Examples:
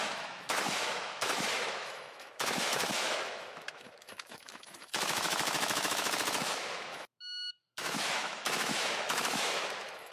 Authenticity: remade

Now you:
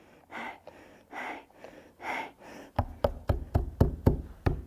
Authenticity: recorded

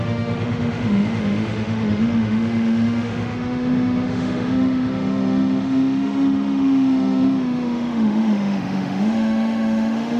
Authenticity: remade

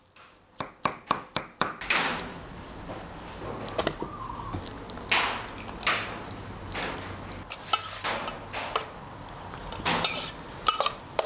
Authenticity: recorded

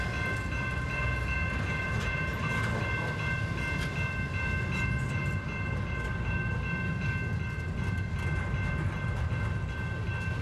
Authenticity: recorded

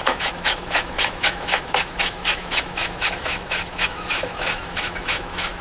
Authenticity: remade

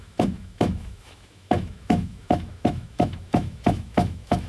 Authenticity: remade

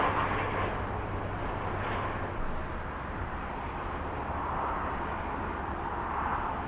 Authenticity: recorded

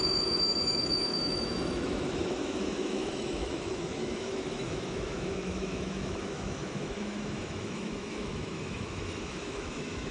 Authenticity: remade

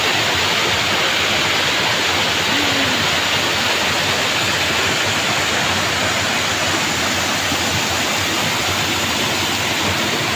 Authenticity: recorded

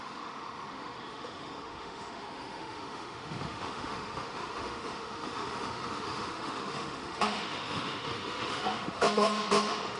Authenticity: remade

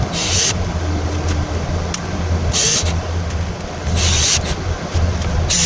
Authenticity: recorded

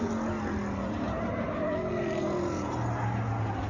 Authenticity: recorded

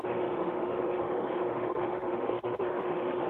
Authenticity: remade